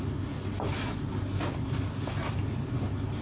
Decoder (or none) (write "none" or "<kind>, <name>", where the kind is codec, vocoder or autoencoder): none